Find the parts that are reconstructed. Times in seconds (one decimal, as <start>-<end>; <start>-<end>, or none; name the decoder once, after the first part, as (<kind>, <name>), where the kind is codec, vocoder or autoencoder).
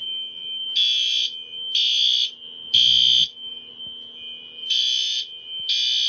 none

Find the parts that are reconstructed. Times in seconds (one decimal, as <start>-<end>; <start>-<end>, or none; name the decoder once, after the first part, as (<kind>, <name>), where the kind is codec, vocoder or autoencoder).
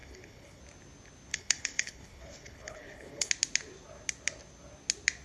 0.0-0.6 (codec, HILCodec); 1.3-3.3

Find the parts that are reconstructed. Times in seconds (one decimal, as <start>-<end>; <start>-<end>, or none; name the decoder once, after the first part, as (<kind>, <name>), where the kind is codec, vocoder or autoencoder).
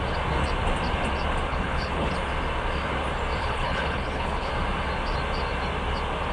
1.5-2.1 (codec, HILCodec); 3.4-4.5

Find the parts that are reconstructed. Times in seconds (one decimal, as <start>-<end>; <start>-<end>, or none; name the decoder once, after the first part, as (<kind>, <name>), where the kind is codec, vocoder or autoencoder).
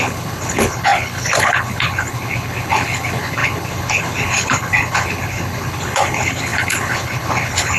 0.0-7.8 (codec, HILCodec)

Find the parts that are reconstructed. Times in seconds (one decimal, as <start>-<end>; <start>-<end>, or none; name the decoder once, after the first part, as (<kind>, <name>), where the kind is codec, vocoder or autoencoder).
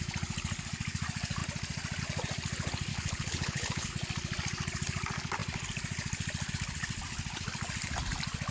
2.9-3.9 (codec, HILCodec)